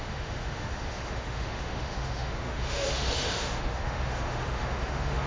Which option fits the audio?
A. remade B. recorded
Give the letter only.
A